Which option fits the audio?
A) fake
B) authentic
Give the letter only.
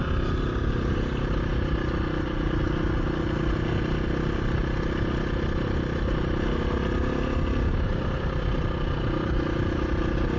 B